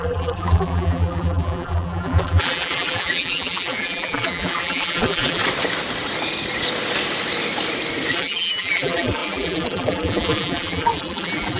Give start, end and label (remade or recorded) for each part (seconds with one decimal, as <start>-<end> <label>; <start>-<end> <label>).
0.0-5.4 remade; 5.4-8.1 recorded; 8.1-11.6 remade